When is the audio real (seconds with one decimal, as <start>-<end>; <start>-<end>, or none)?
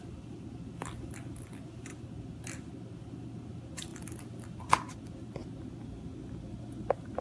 0.0-7.2